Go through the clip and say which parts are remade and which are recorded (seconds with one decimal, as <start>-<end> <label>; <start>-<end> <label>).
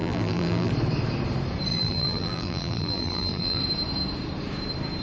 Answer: 0.0-0.7 remade; 0.7-1.7 recorded; 1.7-3.6 remade; 3.6-5.0 recorded